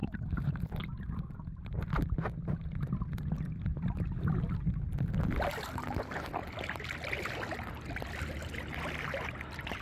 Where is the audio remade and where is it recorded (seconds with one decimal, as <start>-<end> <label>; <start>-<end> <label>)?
0.0-9.8 recorded